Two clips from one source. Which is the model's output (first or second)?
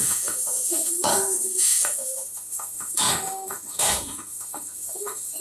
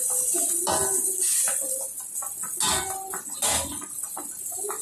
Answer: first